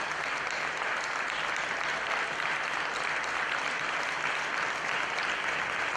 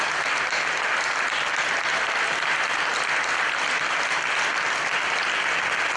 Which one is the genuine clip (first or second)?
second